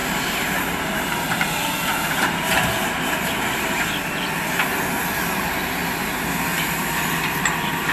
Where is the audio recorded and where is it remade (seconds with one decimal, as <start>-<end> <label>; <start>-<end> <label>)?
0.0-3.4 remade; 3.4-5.8 recorded; 5.8-6.9 remade; 6.9-7.9 recorded